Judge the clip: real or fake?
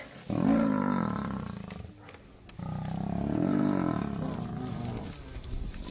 real